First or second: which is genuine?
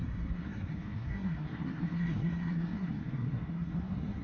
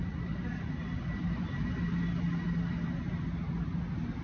second